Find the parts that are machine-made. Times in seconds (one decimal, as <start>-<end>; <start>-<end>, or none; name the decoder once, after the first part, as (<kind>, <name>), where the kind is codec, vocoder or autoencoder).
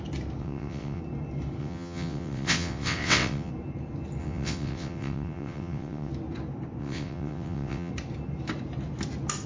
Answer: 0.4-1.0 (vocoder, WaveNeXt); 1.6-3.5; 4.2-6.1; 6.8-7.9